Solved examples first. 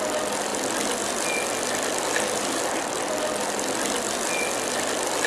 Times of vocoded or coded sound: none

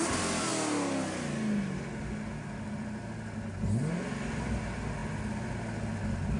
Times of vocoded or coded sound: none